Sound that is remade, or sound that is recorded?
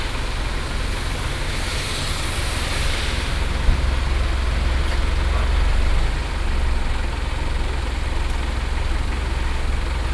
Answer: recorded